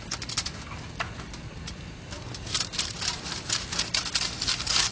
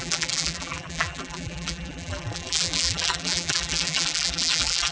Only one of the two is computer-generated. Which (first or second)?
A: second